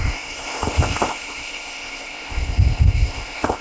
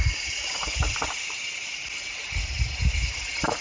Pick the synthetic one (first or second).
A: first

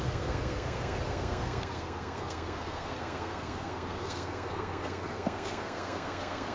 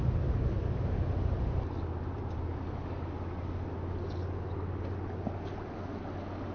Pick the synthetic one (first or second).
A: first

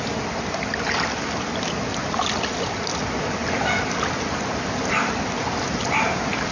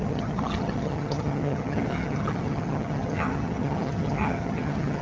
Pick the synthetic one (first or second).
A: second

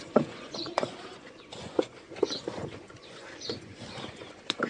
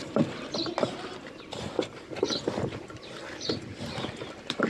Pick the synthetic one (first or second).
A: first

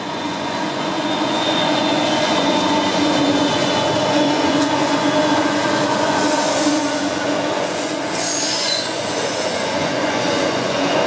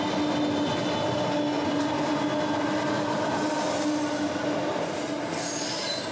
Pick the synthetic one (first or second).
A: first